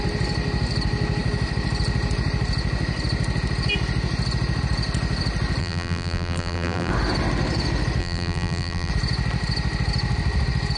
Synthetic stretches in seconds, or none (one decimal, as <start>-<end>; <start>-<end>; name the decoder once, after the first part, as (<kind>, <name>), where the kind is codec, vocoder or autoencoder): 5.6-6.9 (vocoder, BigVGAN v2); 8.0-8.9